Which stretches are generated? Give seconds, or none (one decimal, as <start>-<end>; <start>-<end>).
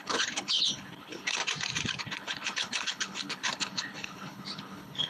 0.0-1.4; 2.0-5.1